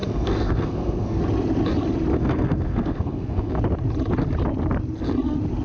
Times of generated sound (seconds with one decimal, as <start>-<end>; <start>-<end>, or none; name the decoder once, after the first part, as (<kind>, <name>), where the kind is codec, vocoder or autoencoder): 0.0-1.2 (codec, SNAC); 2.1-3.6